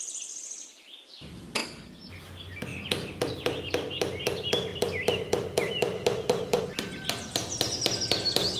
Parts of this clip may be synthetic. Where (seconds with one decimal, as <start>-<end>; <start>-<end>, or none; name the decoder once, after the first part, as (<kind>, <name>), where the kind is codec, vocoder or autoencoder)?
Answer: 4.7-6.6 (vocoder, BigVGAN v2)